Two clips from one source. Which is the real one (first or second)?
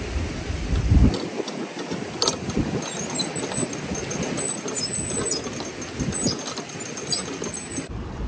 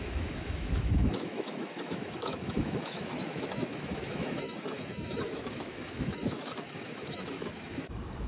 first